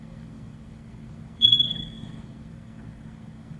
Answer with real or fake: fake